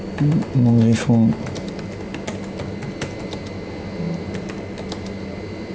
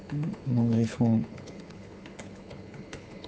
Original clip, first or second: first